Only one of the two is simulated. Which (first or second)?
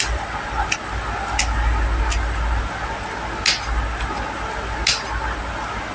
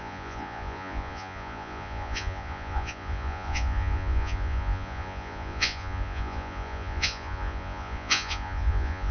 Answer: second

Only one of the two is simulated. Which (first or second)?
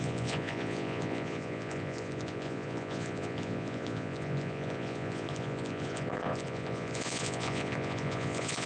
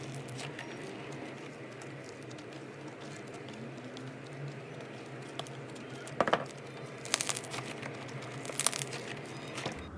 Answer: first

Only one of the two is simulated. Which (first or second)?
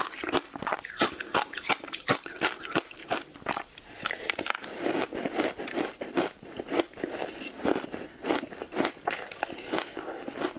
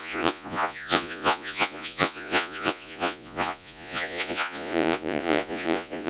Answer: second